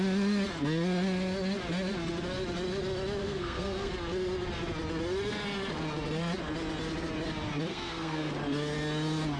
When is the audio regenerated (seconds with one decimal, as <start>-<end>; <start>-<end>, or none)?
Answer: 3.2-3.9; 7.7-8.3